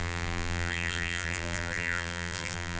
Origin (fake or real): fake